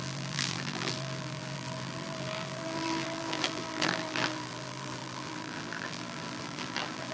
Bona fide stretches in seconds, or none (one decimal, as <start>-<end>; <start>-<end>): none